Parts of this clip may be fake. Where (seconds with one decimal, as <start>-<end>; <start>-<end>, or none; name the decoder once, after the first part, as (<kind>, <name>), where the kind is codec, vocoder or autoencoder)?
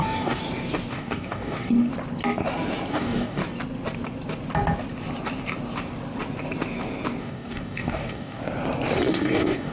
0.0-0.4 (codec, DAC); 0.9-1.9; 2.9-3.4; 7.2-8.4; 9.1-9.7